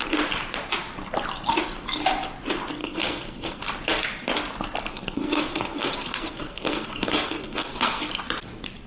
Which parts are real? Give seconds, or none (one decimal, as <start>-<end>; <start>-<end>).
0.0-2.8; 3.6-4.9; 8.1-8.9